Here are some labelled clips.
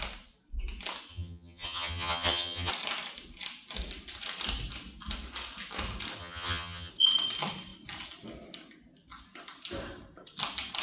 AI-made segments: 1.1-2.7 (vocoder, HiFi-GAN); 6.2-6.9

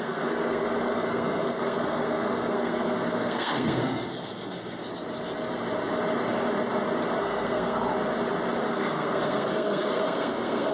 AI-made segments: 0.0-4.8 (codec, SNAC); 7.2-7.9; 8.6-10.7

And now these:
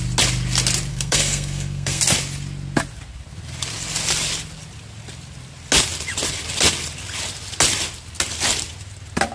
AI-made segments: 0.9-2.0 (codec, SNAC)

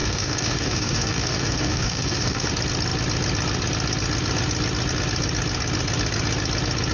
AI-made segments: 0.0-2.5 (codec, DAC)

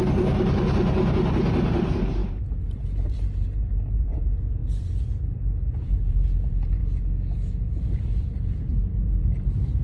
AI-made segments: 1.5-6.8 (vocoder, BigVGAN v2); 7.8-9.8

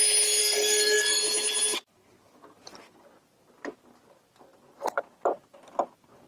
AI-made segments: 0.4-1.2 (codec, SNAC)